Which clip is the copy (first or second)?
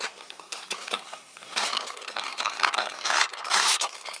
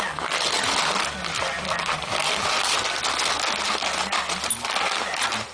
first